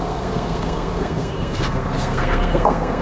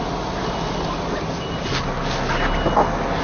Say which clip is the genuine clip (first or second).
second